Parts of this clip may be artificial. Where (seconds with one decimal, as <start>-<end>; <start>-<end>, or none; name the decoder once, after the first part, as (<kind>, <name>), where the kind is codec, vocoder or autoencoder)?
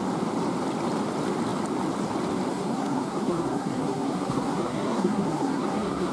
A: 2.5-6.1 (codec, SNAC)